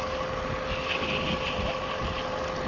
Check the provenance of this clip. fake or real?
real